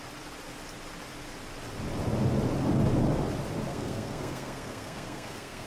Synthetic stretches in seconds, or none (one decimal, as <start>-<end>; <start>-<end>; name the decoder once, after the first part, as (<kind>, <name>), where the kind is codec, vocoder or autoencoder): 3.7-5.7 (codec, SNAC)